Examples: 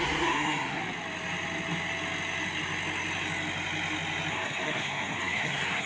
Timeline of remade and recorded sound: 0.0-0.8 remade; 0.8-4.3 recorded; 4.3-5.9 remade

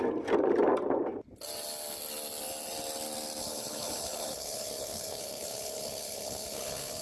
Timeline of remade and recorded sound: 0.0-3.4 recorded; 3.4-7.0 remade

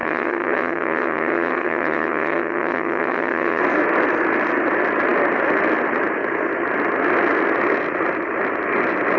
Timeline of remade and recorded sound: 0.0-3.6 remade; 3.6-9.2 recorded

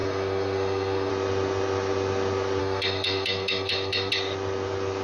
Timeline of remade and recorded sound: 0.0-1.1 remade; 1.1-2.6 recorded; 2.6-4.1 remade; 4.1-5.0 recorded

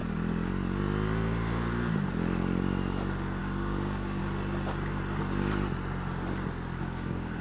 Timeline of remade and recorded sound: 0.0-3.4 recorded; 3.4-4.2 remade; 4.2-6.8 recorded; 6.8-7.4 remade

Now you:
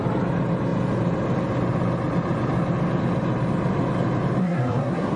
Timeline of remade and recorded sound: 0.0-4.4 recorded; 4.4-5.2 remade

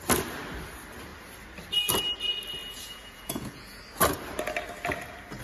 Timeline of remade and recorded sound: 0.0-2.6 recorded; 2.6-3.8 remade; 3.8-5.4 recorded